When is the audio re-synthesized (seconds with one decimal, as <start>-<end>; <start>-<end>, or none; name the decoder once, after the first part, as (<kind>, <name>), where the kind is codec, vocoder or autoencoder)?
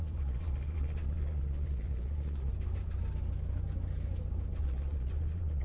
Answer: 0.0-2.5 (vocoder, Vocos); 4.6-5.6